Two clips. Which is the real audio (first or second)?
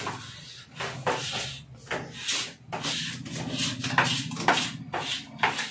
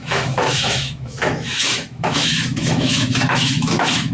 first